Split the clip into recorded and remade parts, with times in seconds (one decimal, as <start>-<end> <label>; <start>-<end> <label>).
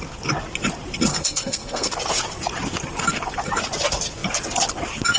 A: 0.0-1.1 recorded; 1.1-1.9 remade; 1.9-5.2 recorded